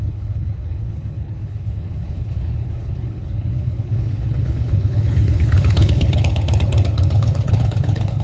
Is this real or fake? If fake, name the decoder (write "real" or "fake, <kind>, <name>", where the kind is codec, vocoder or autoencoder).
fake, codec, HILCodec